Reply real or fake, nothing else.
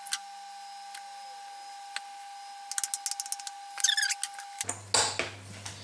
real